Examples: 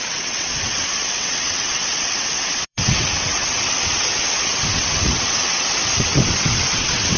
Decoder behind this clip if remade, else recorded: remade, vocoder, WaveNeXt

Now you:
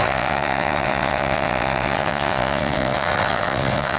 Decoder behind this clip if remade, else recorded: remade, vocoder, WaveNeXt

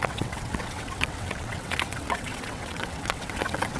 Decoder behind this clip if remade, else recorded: remade, vocoder, WaveNeXt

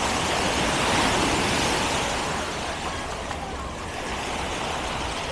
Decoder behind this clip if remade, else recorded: recorded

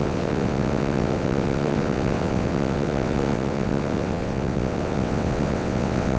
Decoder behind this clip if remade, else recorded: remade, vocoder, WaveNeXt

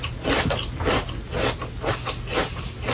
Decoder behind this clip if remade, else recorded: recorded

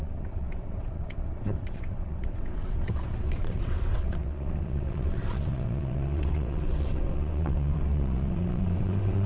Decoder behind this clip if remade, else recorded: remade, vocoder, WaveNeXt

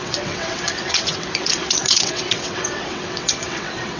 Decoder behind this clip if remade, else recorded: remade, vocoder, WaveNeXt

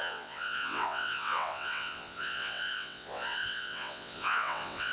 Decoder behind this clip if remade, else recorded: remade, vocoder, WaveNeXt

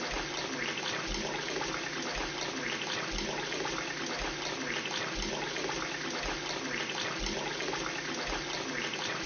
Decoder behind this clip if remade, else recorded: recorded